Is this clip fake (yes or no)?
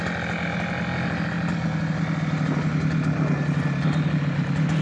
no